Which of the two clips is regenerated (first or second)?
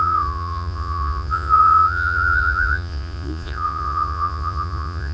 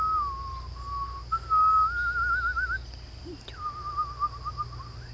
first